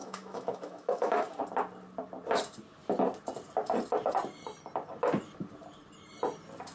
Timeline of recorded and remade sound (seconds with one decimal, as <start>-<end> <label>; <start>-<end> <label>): 0.0-1.4 remade; 1.4-6.7 recorded